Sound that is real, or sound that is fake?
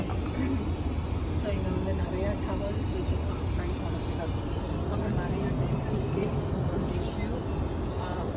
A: real